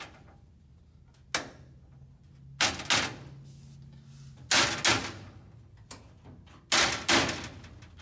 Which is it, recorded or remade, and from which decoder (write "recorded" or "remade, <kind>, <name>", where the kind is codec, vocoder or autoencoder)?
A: recorded